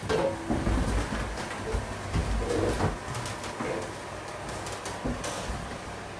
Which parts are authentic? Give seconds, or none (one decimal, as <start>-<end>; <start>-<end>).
0.0-6.2